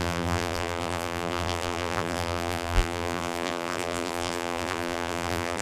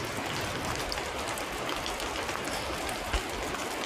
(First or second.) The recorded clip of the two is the second